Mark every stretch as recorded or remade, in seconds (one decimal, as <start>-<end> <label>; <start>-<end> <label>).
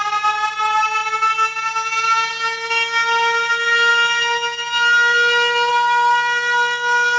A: 0.0-7.2 recorded